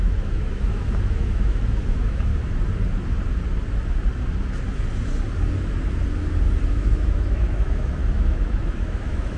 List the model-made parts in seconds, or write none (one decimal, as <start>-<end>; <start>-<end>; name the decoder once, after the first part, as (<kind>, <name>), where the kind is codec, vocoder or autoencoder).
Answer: 0.0-2.3 (autoencoder, DAC-VAE); 6.7-9.4